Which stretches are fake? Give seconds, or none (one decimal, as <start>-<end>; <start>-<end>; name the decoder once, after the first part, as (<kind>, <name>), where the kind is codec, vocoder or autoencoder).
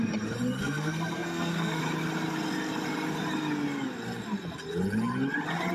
0.6-1.8 (codec, SNAC)